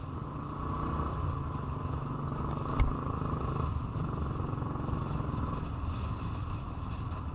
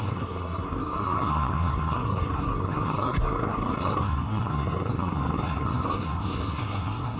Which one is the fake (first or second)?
second